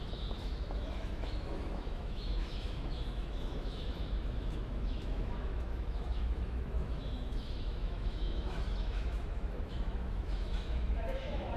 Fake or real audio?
fake